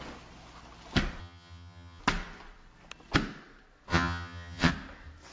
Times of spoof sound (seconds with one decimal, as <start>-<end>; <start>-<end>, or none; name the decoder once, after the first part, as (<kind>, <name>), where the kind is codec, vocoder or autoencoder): 1.2-2.0 (vocoder, HiFi-GAN); 3.9-4.7